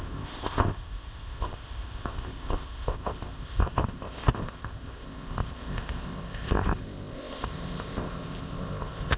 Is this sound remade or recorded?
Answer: remade